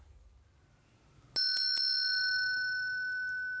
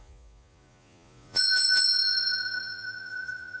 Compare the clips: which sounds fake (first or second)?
second